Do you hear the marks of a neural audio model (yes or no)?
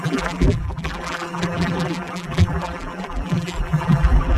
yes